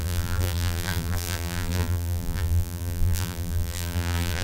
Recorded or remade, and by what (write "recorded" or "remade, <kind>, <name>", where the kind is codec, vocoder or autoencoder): remade, vocoder, BigVGAN v2